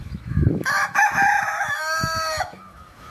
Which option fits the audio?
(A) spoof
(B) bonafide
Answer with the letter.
A